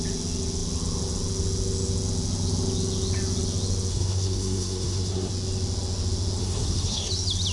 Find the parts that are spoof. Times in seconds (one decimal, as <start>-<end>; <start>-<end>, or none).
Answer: 3.9-5.3; 6.4-7.1